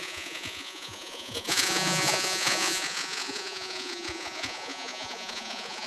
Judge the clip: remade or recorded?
remade